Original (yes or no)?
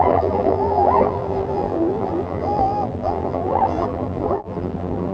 no